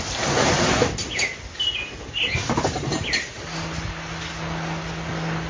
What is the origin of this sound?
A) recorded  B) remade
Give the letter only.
A